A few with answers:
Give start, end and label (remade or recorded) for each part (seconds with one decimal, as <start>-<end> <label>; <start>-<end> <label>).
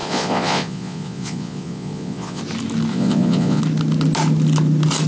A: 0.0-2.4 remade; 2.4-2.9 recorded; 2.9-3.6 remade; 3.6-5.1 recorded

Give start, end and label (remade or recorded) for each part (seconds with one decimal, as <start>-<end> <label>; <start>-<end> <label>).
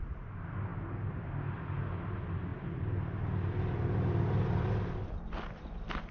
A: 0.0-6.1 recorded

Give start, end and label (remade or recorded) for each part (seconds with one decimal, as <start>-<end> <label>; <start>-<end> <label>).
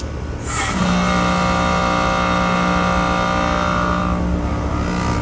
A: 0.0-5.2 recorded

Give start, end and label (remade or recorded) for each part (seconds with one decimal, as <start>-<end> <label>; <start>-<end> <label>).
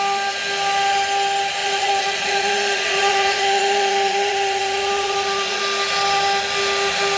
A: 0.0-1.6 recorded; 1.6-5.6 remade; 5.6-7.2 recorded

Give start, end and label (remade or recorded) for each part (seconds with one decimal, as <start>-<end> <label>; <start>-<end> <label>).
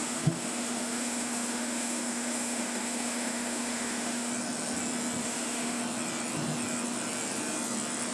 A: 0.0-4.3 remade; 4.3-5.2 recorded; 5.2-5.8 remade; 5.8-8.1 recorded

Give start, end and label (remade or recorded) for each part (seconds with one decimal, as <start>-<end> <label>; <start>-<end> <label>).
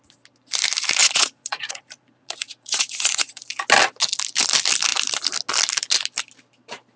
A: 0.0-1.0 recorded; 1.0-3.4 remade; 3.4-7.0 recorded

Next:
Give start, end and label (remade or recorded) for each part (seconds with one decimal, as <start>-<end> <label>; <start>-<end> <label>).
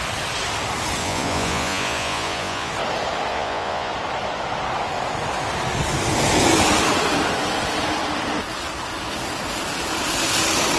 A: 0.0-1.0 recorded; 1.0-2.7 remade; 2.7-3.3 recorded; 3.3-3.9 remade; 3.9-10.8 recorded